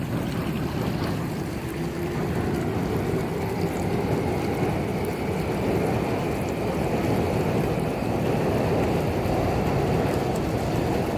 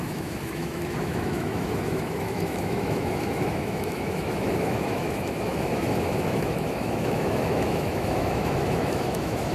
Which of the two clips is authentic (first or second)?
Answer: first